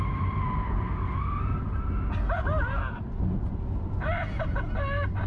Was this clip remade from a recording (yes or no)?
no